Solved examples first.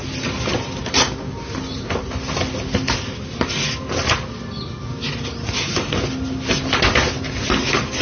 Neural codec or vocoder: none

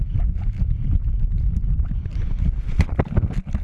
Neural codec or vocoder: vocoder, BigVGAN v2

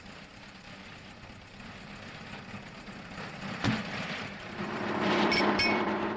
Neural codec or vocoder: vocoder, BigVGAN v2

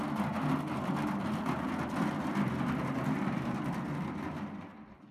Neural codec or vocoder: none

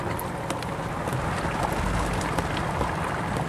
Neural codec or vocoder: none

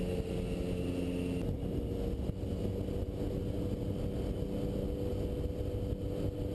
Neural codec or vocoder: none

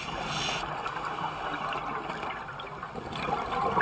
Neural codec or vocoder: none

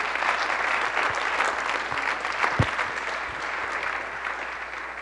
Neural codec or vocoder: none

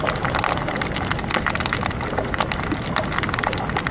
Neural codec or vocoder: none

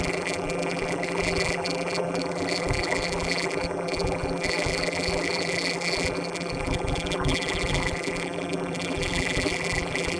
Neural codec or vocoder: vocoder, BigVGAN v2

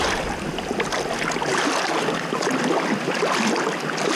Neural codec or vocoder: vocoder, BigVGAN v2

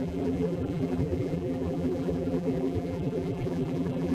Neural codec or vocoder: vocoder, BigVGAN v2